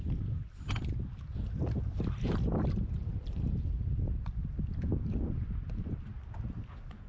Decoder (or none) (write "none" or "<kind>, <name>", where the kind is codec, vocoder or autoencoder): none